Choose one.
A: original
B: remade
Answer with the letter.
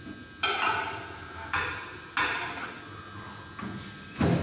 A